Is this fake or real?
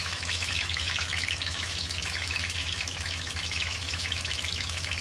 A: fake